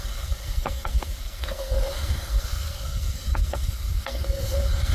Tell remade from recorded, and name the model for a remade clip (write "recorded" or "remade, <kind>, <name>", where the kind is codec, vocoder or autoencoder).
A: remade, codec, SNAC